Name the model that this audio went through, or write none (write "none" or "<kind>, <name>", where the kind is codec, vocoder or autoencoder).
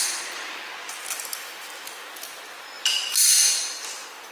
none